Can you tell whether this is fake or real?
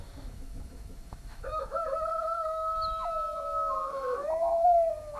fake